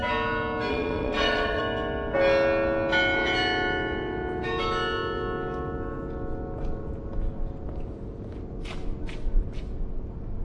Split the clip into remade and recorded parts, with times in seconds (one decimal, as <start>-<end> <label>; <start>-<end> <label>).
0.0-0.7 recorded; 0.7-1.6 remade; 1.6-10.4 recorded